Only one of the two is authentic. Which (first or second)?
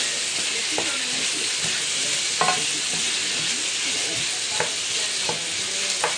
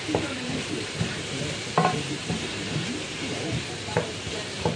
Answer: first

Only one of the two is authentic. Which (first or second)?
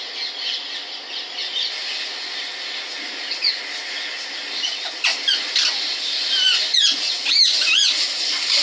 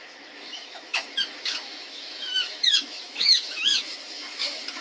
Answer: first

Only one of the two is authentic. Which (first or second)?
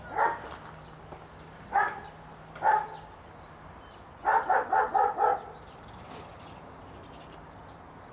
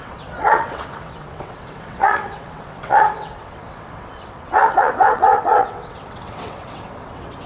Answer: first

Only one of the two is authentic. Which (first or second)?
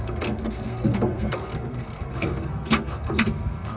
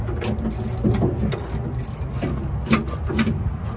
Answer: second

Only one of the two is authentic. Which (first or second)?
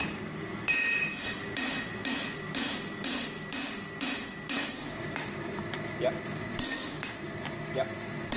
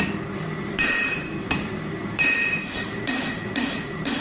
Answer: first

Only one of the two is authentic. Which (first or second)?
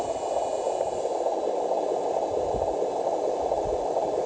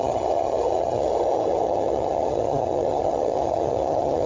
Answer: first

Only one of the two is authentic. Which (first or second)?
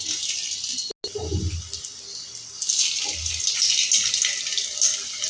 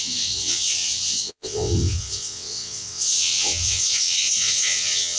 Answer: first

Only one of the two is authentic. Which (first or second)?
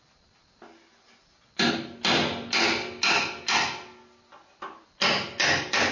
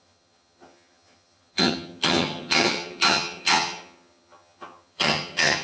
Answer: first